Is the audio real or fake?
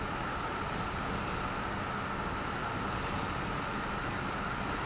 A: real